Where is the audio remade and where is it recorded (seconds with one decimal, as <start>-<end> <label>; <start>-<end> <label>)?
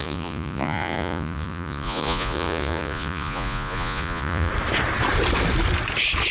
0.0-4.5 remade; 4.5-6.3 recorded